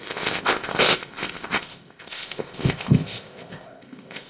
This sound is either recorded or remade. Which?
remade